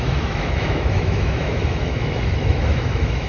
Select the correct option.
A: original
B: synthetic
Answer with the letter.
B